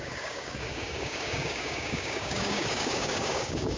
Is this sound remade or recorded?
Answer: remade